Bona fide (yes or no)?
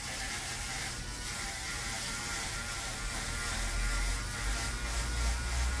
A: yes